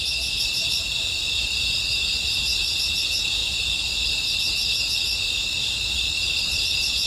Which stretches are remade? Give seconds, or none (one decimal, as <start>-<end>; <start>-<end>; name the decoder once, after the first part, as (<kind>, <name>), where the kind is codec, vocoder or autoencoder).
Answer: 0.0-7.1 (vocoder, BigVGAN v2)

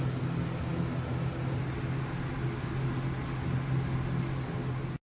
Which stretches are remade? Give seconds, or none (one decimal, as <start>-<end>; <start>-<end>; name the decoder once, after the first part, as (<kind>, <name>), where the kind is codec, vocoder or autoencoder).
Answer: none

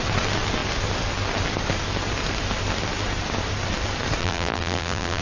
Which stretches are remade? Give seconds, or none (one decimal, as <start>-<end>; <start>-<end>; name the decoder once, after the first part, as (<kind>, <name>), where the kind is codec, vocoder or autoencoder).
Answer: 4.2-5.2 (vocoder, BigVGAN v2)

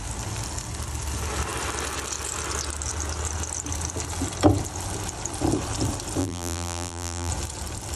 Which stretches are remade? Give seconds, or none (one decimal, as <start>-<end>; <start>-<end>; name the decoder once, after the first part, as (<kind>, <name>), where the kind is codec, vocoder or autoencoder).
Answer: 6.2-7.3 (vocoder, BigVGAN v2)